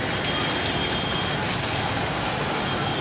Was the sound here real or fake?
real